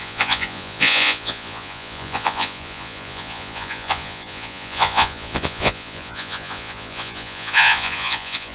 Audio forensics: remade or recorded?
remade